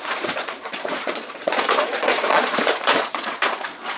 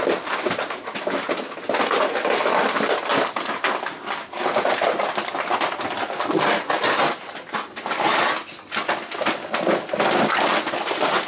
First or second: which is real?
second